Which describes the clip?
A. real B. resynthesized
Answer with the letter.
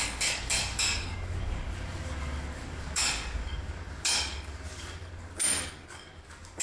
B